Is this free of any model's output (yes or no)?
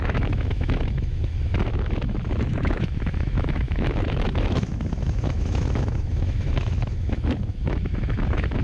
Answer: no